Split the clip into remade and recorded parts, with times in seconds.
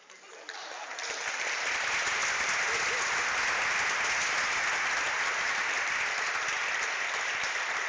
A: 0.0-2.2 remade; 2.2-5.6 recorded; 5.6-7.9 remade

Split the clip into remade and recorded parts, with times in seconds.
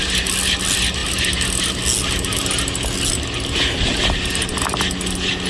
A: 0.0-5.5 recorded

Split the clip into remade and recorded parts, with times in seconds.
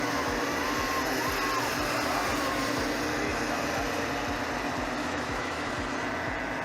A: 0.0-5.0 recorded; 5.0-5.7 remade; 5.7-6.6 recorded